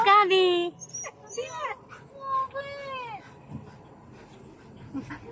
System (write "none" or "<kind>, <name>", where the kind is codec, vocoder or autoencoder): none